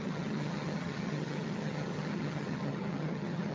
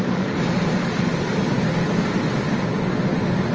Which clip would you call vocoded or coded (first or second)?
first